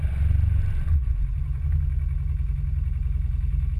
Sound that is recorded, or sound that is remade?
recorded